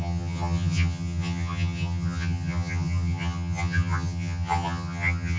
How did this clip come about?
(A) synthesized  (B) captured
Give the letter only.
A